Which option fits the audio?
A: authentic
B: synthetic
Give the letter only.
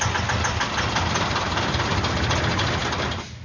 A